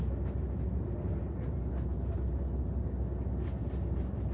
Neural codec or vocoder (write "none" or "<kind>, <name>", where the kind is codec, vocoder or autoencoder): none